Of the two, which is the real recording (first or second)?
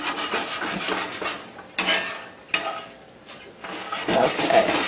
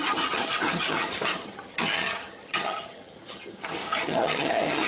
first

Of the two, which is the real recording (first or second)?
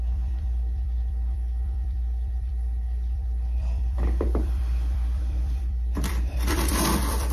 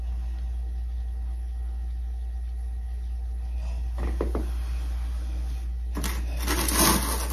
second